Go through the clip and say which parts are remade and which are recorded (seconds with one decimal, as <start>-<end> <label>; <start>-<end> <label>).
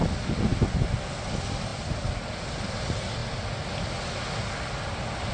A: 0.0-5.3 recorded